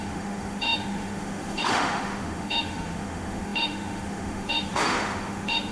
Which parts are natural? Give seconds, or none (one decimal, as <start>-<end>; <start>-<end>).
none